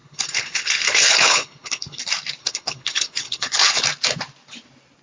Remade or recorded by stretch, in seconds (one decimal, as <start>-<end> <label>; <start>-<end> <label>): 0.0-2.0 remade; 2.0-2.4 recorded; 2.4-3.8 remade; 3.8-5.0 recorded